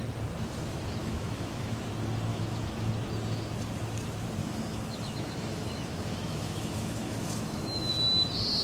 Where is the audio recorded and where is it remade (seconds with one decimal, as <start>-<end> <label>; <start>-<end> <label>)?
0.0-1.0 recorded; 1.0-1.8 remade; 1.8-2.3 recorded; 2.3-2.9 remade; 2.9-4.4 recorded; 4.4-7.9 remade; 7.9-8.6 recorded